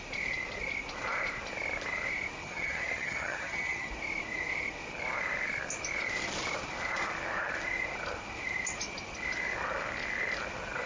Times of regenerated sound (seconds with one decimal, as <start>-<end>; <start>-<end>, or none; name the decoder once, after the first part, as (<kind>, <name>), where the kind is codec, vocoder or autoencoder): 2.4-3.9 (vocoder, HiFi-GAN)